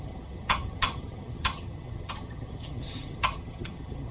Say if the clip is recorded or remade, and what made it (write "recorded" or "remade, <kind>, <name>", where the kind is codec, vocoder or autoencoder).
remade, vocoder, HiFi-GAN